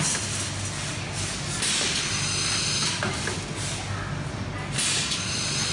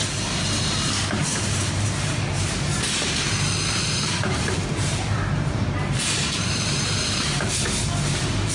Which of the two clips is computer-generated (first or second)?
second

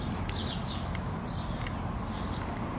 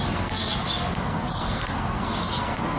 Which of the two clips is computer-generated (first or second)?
second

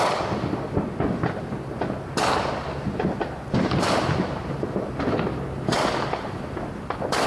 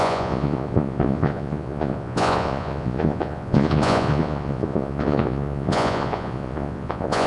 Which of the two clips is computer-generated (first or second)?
second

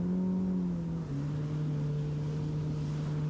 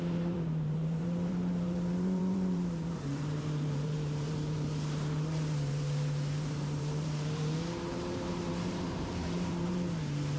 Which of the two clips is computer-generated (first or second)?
second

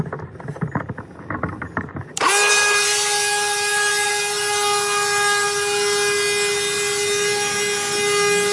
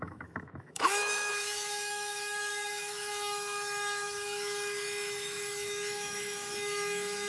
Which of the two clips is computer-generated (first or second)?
second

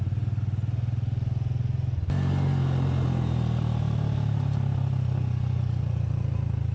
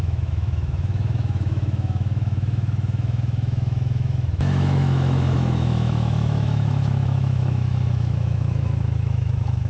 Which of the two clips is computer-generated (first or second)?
second